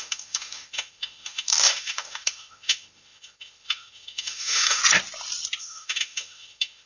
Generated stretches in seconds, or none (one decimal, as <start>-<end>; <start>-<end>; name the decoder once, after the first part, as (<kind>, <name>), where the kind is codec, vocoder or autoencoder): 0.0-4.8 (autoencoder, DAC-VAE); 5.6-6.9